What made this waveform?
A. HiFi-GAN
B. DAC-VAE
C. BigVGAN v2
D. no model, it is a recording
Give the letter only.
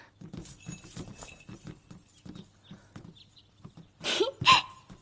D